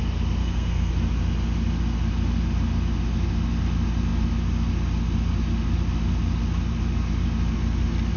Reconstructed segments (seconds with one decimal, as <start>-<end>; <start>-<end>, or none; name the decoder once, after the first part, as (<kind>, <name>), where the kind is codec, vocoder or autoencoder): 0.4-0.9 (codec, SNAC)